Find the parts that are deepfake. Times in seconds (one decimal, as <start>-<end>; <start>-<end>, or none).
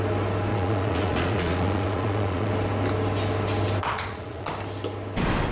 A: 0.5-2.5; 3.8-4.5